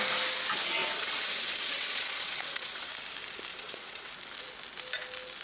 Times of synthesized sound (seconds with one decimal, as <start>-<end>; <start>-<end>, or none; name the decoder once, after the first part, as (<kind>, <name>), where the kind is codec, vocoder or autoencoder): 0.8-2.9 (vocoder, WaveNeXt); 3.5-4.1